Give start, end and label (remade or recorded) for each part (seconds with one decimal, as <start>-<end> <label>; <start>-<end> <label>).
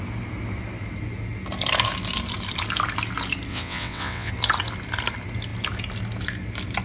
0.0-3.5 recorded; 3.5-4.3 remade; 4.3-6.8 recorded